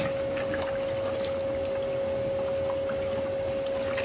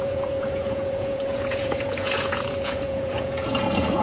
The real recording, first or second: first